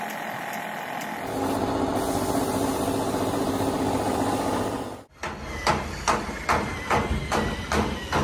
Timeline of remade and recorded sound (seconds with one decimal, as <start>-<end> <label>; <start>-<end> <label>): 0.0-8.2 recorded